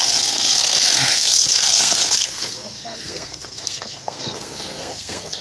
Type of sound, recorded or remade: remade